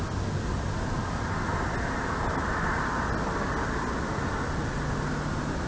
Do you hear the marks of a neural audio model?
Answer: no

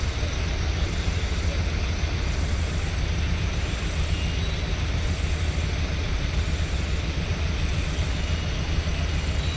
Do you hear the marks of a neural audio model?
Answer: no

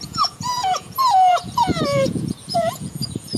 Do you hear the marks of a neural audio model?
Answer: yes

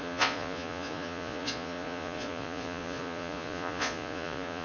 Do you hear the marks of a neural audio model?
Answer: yes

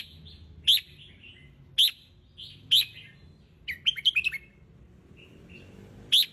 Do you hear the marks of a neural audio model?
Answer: no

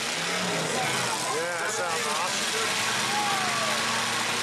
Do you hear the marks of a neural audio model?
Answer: no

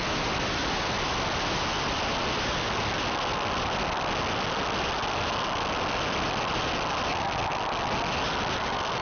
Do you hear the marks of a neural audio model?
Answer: no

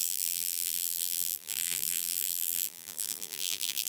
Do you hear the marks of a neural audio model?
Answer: yes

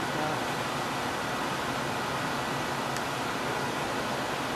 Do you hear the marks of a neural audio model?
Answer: no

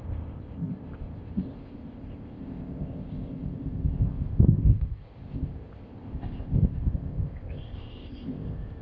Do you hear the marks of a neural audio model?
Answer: yes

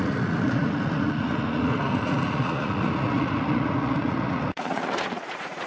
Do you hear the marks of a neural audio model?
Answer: yes